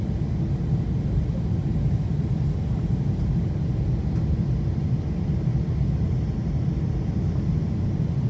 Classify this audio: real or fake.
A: real